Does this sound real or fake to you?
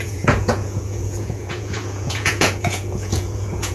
fake